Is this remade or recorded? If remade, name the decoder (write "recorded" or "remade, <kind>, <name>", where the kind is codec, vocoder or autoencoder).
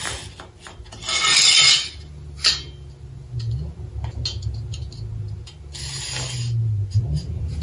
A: recorded